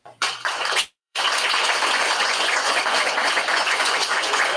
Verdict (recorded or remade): remade